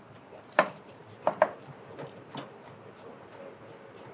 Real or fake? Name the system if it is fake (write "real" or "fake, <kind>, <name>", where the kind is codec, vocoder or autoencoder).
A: real